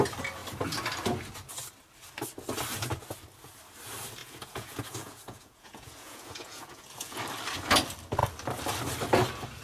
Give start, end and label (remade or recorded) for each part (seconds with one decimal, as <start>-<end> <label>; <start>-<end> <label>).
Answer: 0.0-4.2 recorded; 4.2-7.2 remade; 7.2-9.6 recorded